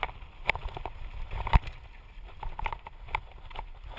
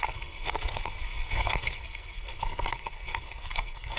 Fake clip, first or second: second